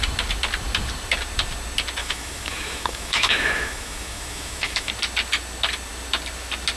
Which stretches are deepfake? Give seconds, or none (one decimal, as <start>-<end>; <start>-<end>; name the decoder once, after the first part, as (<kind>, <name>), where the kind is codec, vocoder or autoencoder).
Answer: 2.0-4.9 (autoencoder, DAC-VAE)